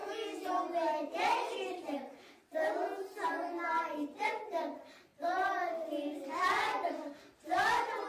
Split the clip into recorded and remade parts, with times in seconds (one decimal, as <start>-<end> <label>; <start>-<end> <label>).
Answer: 0.0-0.5 remade; 0.5-8.1 recorded